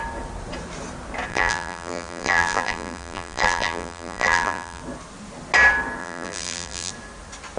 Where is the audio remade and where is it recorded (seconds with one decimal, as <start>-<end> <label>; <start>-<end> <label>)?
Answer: 0.0-1.3 recorded; 1.3-4.8 remade; 4.8-6.0 recorded; 6.0-6.9 remade; 6.9-7.6 recorded